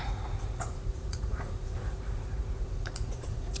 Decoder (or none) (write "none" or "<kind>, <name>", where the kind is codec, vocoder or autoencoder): vocoder, Vocos